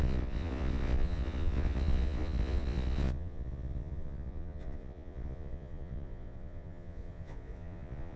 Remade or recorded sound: remade